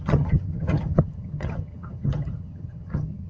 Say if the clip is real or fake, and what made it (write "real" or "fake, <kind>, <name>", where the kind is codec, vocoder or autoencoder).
fake, vocoder, HiFi-GAN